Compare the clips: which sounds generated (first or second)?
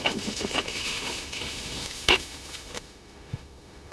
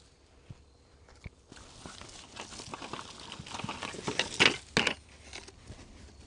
first